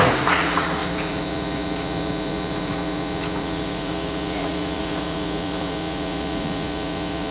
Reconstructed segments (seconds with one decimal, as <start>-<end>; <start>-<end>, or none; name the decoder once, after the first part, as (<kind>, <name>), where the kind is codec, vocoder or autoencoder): 0.0-7.3 (vocoder, Vocos)